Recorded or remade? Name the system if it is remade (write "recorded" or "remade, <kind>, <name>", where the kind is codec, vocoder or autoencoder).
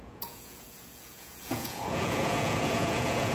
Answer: remade, vocoder, Vocos